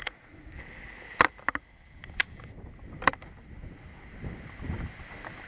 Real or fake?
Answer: real